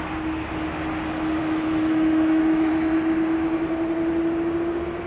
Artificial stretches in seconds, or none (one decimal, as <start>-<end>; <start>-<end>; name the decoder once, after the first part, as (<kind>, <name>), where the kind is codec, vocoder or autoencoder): 1.4-2.7 (autoencoder, DAC-VAE)